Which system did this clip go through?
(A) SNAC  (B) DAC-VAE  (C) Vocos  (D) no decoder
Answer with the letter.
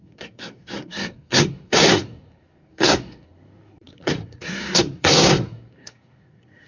A